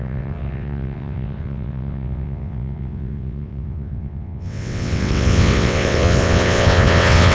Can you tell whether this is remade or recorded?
remade